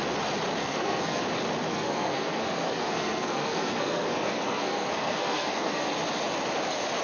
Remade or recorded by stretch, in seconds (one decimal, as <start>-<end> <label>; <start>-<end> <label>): 0.0-0.6 recorded; 0.6-1.2 remade; 1.2-1.7 recorded; 1.7-5.9 remade; 5.9-7.0 recorded